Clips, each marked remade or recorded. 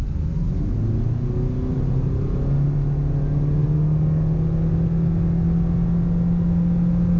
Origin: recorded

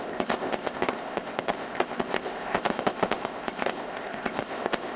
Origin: remade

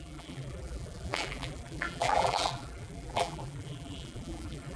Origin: remade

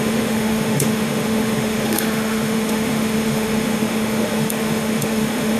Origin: remade